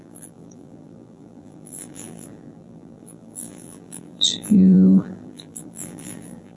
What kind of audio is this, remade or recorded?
remade